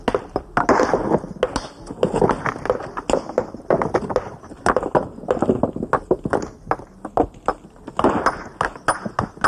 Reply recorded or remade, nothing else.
recorded